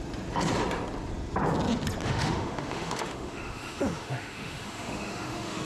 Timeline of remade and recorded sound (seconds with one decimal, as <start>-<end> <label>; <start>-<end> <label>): 0.0-2.0 recorded; 2.0-5.6 remade